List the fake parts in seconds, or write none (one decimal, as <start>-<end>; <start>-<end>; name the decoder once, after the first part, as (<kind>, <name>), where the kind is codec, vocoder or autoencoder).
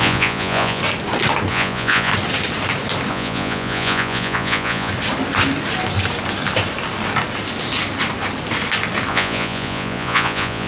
0.0-0.8 (vocoder, Vocos); 1.5-2.1; 3.1-4.9; 9.1-10.7